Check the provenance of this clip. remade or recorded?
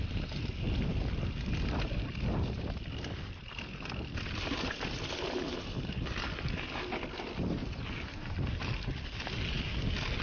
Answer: recorded